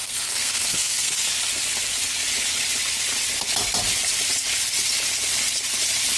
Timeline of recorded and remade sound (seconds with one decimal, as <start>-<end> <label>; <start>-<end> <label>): 0.0-1.3 remade; 1.3-6.2 recorded